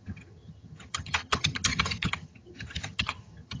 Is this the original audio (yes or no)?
no